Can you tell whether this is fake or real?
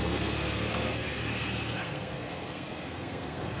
fake